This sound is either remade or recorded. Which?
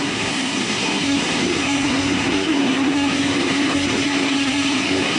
remade